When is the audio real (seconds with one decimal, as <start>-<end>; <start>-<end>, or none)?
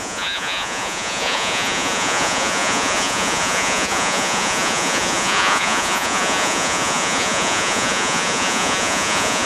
none